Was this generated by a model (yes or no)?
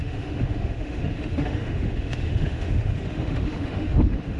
yes